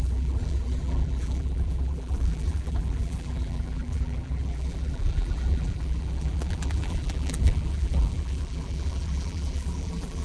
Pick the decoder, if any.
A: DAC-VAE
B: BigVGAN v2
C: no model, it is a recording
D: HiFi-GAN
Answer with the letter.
B